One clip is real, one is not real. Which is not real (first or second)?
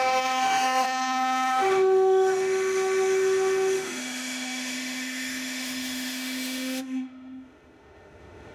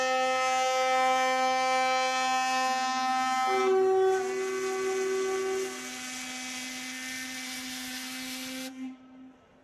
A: first